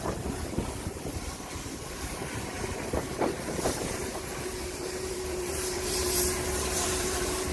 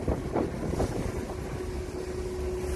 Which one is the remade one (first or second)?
first